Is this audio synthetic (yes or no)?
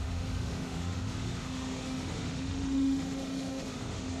yes